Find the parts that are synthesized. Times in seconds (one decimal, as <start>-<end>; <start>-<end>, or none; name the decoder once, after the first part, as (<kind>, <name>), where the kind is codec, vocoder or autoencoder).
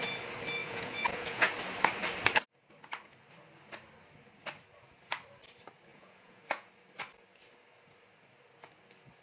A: 0.6-1.5 (vocoder, Vocos); 5.9-6.7